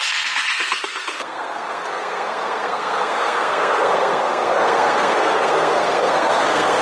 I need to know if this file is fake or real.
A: fake